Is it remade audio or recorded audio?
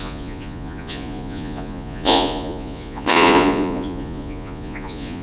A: remade